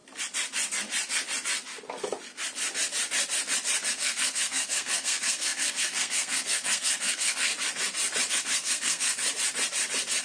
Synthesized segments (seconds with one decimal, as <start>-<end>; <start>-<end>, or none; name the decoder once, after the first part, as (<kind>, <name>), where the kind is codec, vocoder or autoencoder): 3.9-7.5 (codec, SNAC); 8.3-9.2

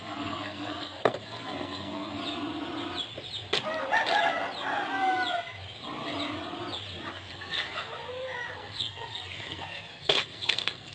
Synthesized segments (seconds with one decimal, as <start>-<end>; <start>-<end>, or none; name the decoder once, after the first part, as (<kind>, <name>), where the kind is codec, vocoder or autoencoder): 0.0-2.2 (codec, SNAC); 7.1-7.9; 8.5-10.9

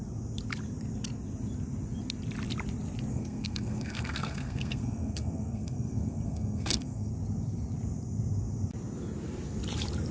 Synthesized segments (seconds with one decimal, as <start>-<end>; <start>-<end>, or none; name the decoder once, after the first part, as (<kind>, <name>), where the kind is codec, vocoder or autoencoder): 3.1-7.1 (codec, SNAC)

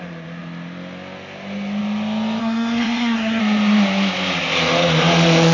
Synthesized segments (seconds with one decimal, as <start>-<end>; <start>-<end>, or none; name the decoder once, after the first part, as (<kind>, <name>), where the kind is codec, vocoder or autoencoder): 2.4-3.4 (codec, SNAC)

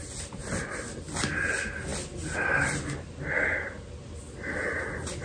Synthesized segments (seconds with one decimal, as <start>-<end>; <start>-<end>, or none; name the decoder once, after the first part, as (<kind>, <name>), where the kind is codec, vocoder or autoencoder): none